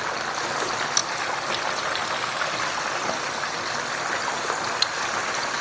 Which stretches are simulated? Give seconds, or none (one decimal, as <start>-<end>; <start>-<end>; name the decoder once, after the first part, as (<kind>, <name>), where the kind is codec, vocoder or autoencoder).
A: none